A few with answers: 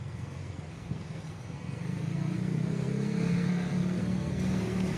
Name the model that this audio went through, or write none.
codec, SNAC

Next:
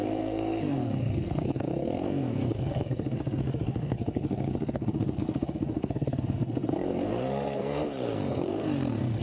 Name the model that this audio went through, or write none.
codec, SNAC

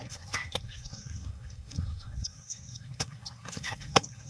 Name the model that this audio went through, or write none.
codec, SNAC